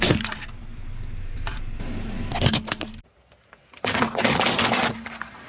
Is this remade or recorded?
recorded